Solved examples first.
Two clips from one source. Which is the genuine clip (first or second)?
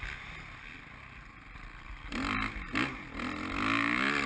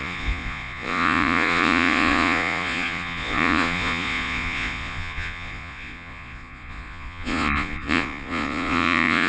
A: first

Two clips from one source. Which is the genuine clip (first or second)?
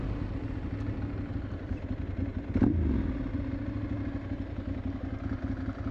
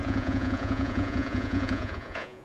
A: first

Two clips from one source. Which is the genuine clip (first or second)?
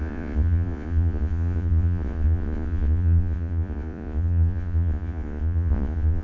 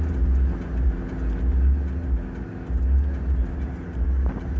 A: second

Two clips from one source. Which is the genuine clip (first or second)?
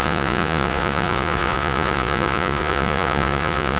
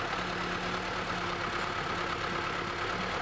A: second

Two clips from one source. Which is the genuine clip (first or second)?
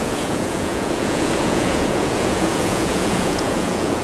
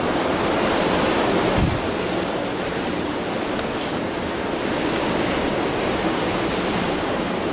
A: second